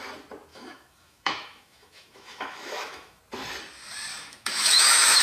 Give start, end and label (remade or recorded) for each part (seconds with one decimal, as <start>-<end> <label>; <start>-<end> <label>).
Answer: 0.0-0.5 recorded; 0.5-3.2 remade; 3.2-4.1 recorded; 4.1-5.2 remade